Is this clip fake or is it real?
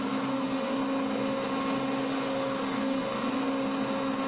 real